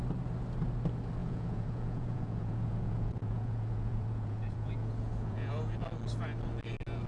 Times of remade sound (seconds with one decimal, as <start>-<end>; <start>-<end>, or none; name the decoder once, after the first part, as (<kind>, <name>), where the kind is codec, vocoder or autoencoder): 1.2-5.5 (vocoder, Vocos)